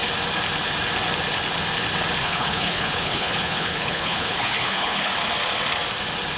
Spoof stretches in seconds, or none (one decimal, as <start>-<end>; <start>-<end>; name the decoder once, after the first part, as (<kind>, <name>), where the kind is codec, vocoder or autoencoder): 2.2-5.1 (codec, HILCodec)